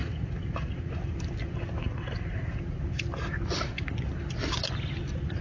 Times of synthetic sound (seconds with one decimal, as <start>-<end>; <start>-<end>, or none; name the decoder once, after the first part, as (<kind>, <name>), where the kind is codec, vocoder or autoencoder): none